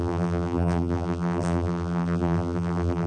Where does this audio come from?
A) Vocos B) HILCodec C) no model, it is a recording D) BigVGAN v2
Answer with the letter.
D